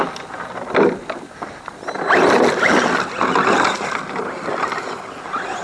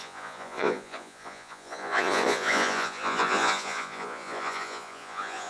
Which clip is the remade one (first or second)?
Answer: second